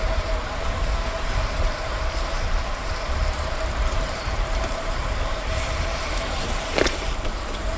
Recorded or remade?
remade